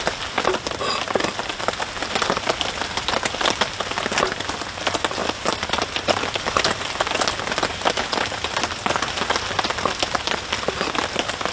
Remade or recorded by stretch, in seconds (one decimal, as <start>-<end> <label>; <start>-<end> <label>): 0.0-11.5 recorded